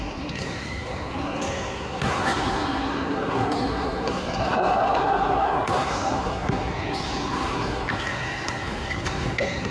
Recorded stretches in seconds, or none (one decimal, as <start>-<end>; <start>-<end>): none